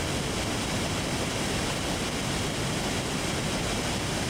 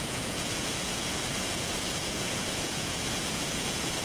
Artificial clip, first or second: second